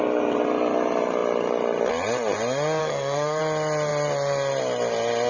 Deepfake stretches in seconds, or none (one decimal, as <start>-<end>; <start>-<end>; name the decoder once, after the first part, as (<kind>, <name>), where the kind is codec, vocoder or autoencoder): 2.8-3.4 (codec, SNAC)